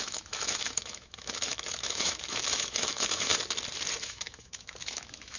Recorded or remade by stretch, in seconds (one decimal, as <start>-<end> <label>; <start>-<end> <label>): 0.0-3.3 remade; 3.3-4.0 recorded; 4.0-5.4 remade

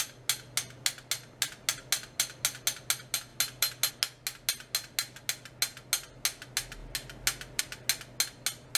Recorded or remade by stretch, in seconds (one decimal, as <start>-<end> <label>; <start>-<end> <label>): 0.0-8.8 recorded

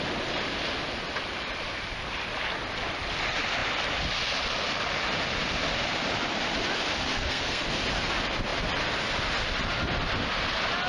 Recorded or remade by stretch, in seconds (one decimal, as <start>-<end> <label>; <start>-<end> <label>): 0.0-7.1 recorded; 7.1-7.7 remade; 7.7-10.9 recorded